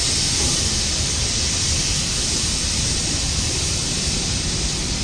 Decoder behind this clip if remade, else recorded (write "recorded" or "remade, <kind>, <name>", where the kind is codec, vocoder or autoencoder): recorded